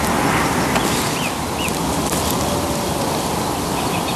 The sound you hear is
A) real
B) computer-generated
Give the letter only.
A